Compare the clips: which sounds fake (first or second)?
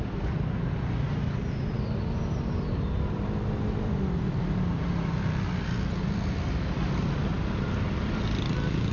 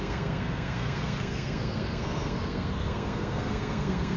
second